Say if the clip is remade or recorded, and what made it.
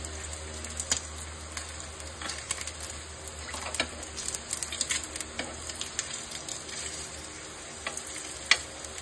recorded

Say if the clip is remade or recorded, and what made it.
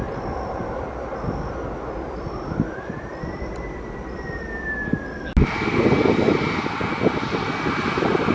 recorded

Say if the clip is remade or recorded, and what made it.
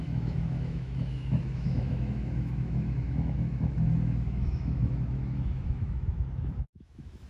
remade, autoencoder, DAC-VAE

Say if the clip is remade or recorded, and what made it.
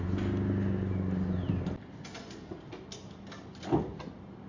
recorded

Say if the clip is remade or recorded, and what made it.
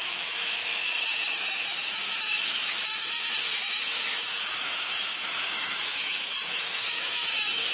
remade, autoencoder, DAC-VAE